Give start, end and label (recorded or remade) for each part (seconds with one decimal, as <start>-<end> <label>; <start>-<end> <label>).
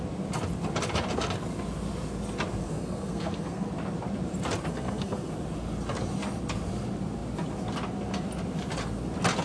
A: 0.0-2.6 recorded; 2.6-3.7 remade; 3.7-4.7 recorded; 4.7-5.3 remade; 5.3-9.4 recorded